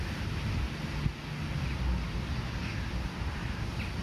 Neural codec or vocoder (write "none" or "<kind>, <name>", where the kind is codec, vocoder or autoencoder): none